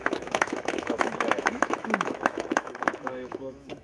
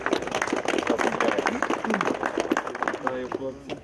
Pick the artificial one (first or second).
first